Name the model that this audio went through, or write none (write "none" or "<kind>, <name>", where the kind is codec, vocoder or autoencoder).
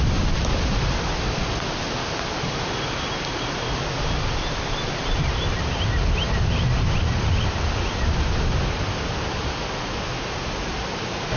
none